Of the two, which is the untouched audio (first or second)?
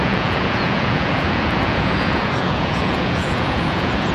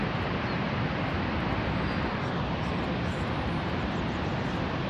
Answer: second